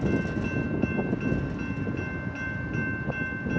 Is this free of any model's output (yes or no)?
yes